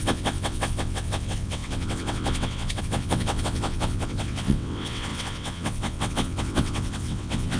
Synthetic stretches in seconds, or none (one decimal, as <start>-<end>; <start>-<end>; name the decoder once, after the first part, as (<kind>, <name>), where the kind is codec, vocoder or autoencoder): 0.0-7.6 (vocoder, WaveNeXt)